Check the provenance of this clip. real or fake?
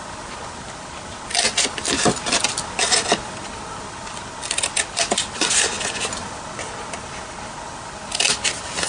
real